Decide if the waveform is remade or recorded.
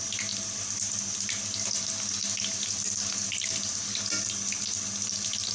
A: recorded